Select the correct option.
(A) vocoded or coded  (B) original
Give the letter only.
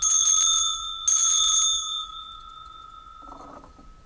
B